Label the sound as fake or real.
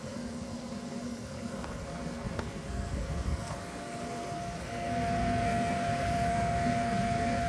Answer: fake